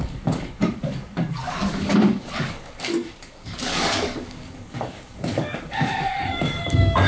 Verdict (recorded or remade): remade